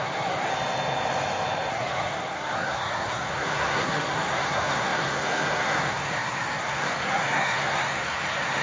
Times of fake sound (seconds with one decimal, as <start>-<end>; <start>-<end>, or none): 0.0-0.5; 1.7-8.6